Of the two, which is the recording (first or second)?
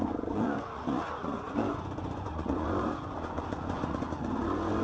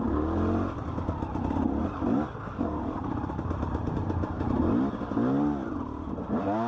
second